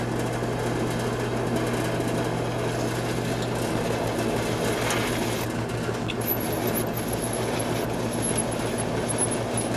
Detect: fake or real real